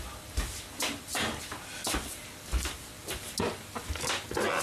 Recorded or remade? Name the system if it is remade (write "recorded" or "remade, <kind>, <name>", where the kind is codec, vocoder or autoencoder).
recorded